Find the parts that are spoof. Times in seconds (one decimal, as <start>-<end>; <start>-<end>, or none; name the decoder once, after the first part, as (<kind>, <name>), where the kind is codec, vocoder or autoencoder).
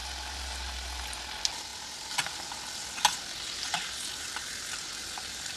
none